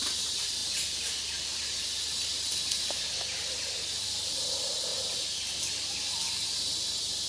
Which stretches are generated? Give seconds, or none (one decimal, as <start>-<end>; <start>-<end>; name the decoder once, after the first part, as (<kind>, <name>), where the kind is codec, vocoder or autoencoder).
none